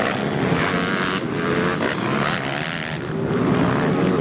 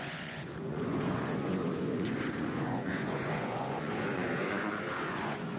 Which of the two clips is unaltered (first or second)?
first